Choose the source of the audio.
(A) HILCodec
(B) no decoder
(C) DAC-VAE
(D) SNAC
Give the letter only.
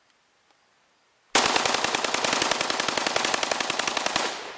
B